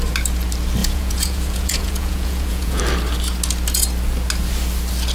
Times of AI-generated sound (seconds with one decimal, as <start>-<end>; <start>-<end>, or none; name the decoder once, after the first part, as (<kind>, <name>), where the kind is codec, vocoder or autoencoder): 0.8-2.8 (vocoder, Vocos)